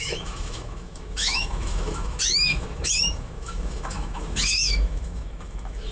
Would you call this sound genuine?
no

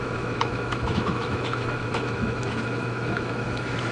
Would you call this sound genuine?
no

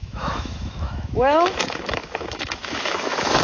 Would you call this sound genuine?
no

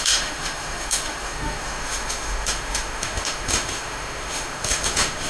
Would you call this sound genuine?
no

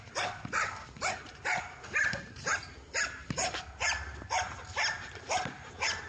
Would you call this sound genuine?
yes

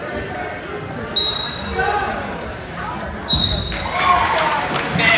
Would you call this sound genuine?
yes